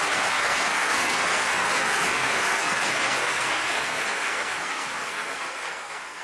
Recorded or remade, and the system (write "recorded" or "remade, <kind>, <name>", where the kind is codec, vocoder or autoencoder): remade, codec, SNAC